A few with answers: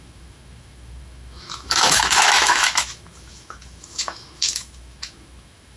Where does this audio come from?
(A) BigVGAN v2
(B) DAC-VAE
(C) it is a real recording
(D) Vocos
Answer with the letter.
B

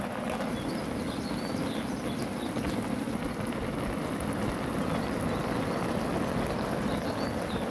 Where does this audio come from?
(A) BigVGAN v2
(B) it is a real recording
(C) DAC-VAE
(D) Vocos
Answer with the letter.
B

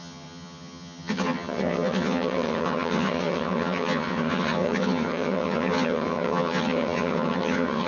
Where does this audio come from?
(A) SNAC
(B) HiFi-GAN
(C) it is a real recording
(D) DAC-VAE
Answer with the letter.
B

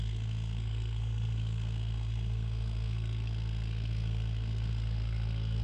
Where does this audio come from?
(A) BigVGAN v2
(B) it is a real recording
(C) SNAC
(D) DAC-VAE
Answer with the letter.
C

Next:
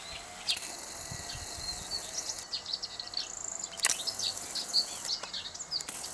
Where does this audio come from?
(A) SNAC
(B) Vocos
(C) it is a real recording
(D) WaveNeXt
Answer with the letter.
C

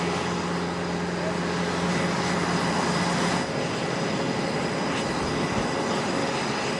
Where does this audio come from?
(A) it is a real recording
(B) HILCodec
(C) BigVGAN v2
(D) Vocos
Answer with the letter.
A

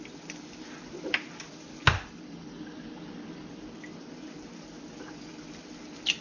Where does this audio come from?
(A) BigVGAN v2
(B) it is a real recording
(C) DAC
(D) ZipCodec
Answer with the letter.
B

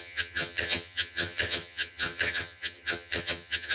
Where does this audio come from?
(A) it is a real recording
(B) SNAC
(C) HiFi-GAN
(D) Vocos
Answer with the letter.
C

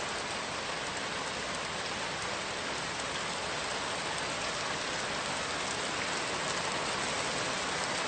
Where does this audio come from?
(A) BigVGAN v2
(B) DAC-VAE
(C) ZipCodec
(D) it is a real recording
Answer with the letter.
D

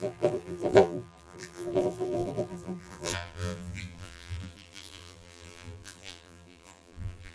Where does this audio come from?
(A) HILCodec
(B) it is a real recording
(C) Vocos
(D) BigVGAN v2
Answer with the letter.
D